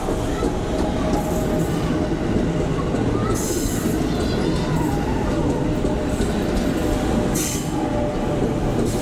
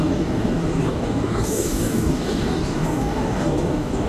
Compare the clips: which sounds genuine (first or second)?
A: first